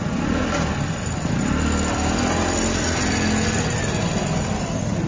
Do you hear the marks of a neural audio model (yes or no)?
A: no